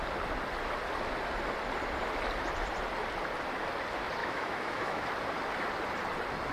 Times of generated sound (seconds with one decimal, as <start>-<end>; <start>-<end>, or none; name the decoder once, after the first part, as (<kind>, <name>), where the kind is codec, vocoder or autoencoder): 4.2-5.1 (autoencoder, DAC-VAE)

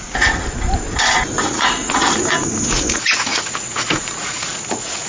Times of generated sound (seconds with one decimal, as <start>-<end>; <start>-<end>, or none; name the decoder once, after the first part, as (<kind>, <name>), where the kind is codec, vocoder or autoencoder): 0.0-0.4 (vocoder, Vocos); 1.5-2.0; 2.7-5.1

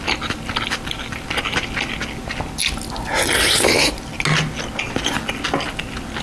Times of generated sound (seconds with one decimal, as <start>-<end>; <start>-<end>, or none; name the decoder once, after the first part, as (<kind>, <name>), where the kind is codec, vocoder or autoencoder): none

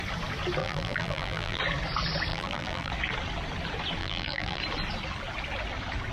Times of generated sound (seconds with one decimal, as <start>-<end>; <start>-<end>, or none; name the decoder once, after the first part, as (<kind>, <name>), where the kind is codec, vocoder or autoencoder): 0.6-1.6 (vocoder, BigVGAN v2); 2.3-2.9; 4.0-4.6